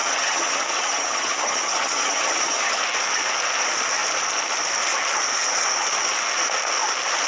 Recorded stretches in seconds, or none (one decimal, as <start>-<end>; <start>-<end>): 2.8-7.3

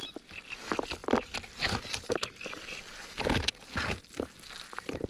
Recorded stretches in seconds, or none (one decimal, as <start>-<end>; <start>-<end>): 0.0-5.1

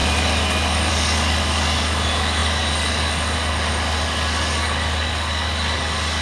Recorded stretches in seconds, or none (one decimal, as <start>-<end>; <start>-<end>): none

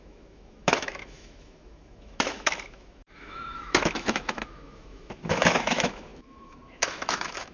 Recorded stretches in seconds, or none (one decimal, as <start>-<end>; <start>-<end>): none

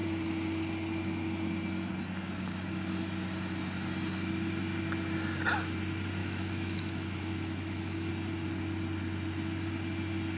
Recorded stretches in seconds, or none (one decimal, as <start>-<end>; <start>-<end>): 0.0-6.2; 8.1-10.4

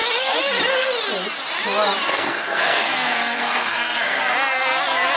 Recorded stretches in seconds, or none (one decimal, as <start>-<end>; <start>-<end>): 0.0-2.1; 4.2-5.2

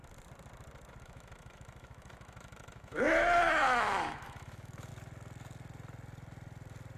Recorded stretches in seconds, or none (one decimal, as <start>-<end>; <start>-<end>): 0.0-1.0; 4.9-7.0

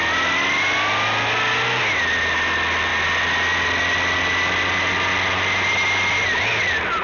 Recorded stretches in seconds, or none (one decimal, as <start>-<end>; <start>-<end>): 0.0-7.0